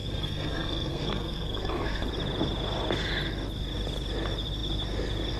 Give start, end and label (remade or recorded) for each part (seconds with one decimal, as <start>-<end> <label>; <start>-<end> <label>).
0.0-2.1 remade; 2.1-5.4 recorded